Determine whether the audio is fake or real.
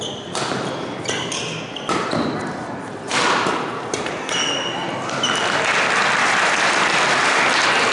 real